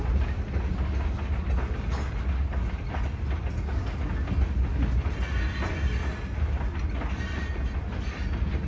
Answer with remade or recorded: recorded